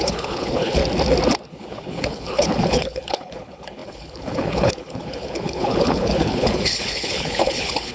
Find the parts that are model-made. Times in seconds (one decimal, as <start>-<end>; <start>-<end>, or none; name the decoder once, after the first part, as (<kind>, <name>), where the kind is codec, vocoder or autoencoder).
0.0-0.8 (codec, HILCodec); 1.5-7.9